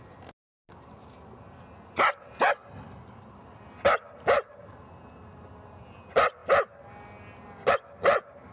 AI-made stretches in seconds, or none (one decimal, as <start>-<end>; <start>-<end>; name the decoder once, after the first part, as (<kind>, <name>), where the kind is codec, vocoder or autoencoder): none